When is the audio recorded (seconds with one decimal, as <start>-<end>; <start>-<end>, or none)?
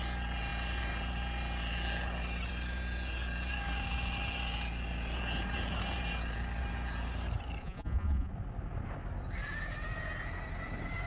0.0-7.6; 8.3-11.1